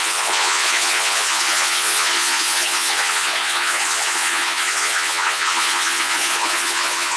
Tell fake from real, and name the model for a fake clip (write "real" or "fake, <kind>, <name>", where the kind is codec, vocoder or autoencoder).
fake, vocoder, Vocos